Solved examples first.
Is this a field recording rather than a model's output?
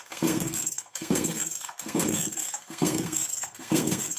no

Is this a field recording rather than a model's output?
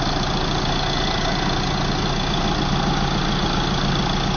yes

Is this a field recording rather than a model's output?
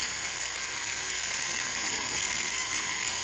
no